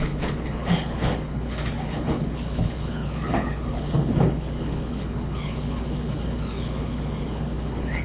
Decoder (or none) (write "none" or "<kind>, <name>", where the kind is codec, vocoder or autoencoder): codec, HILCodec